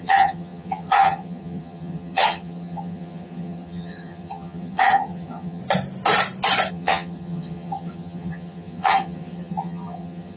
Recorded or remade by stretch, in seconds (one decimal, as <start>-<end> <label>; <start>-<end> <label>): 0.0-5.6 remade; 5.6-6.7 recorded; 6.7-10.4 remade